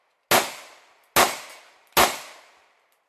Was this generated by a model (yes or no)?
no